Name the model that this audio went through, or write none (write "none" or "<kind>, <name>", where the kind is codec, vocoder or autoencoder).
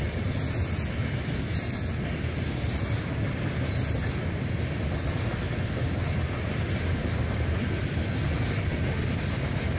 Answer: none